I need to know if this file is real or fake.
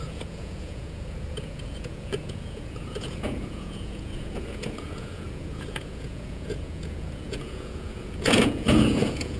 fake